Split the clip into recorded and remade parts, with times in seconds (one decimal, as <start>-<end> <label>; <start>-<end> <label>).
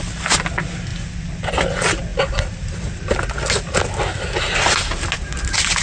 0.0-5.8 recorded